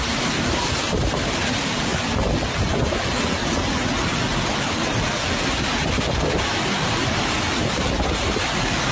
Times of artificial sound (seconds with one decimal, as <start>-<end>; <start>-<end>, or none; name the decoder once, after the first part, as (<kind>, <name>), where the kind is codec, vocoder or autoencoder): none